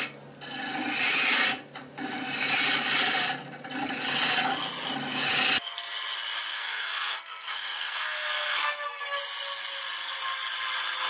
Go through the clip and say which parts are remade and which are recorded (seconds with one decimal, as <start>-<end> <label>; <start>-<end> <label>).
0.0-6.5 recorded; 6.5-9.0 remade; 9.0-11.1 recorded